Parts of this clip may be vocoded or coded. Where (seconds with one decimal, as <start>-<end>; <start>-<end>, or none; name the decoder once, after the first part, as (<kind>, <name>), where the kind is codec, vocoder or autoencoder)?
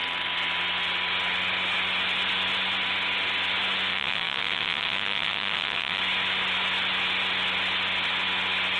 3.9-6.0 (vocoder, WaveNeXt)